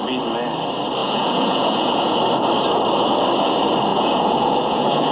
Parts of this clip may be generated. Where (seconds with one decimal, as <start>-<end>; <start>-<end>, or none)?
1.0-2.2; 3.9-5.1